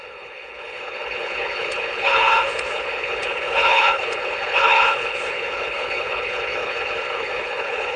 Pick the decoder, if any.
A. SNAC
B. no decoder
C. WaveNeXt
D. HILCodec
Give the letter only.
D